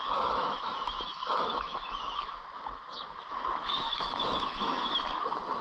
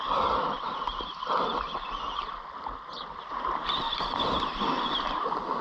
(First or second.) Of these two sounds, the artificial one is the first